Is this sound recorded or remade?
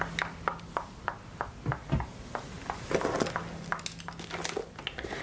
recorded